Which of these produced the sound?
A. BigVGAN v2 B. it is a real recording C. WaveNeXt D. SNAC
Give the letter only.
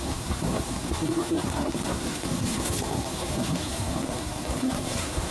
D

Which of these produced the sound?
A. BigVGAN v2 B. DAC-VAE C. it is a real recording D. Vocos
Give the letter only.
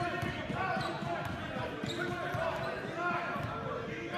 C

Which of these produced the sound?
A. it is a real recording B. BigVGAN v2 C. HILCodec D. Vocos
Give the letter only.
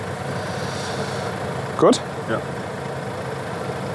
A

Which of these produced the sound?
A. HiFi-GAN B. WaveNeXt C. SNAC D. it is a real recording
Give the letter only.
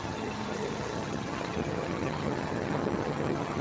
A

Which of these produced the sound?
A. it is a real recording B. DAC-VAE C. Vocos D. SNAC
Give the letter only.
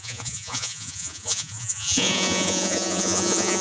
C